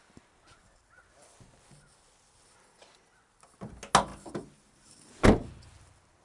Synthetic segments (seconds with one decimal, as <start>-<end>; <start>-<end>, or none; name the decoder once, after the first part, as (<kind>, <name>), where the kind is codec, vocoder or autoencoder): none